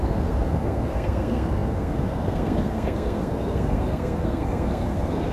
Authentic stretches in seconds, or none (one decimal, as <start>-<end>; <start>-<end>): none